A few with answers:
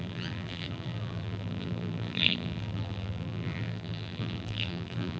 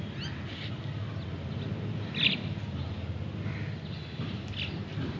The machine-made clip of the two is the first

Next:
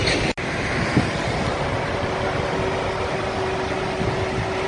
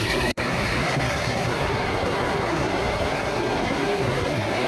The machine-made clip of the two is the second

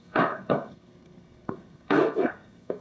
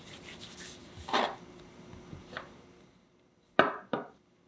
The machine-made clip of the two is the first